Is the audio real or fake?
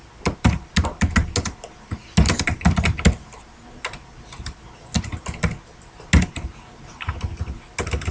real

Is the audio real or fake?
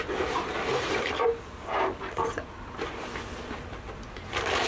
real